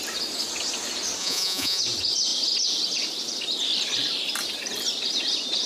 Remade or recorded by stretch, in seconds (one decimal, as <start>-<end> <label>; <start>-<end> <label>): 0.0-1.2 recorded; 1.2-1.8 remade; 1.8-5.7 recorded